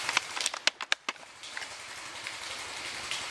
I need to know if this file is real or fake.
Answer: real